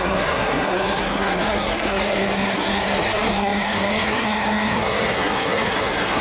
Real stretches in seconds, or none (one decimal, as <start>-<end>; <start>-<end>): none